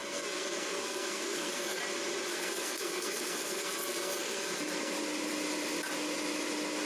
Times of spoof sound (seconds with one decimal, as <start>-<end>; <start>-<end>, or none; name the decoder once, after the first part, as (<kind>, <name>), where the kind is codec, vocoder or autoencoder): 0.0-1.8 (codec, SNAC); 2.3-4.9